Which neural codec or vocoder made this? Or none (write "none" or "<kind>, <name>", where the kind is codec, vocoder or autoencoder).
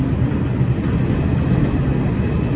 none